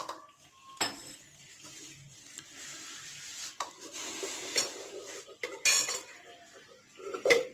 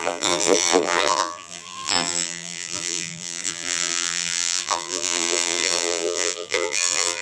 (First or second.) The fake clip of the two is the second